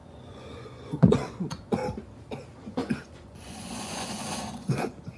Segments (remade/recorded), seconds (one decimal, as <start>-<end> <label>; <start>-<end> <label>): 0.0-1.8 remade; 1.8-2.7 recorded; 2.7-5.2 remade